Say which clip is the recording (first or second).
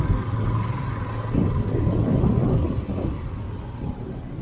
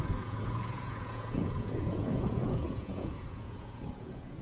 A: first